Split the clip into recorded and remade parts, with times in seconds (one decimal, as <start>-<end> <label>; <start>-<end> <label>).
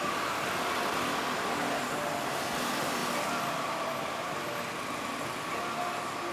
0.0-6.3 recorded